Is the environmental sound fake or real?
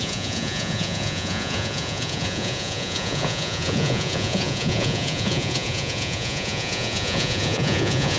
fake